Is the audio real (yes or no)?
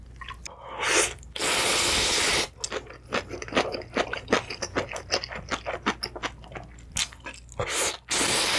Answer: yes